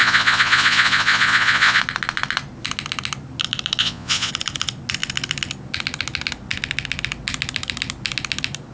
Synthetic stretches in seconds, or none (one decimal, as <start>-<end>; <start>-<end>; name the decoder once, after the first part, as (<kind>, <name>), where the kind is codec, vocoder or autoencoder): 0.0-1.8 (vocoder, Vocos); 3.8-4.3